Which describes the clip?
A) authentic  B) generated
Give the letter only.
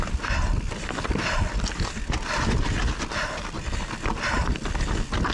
A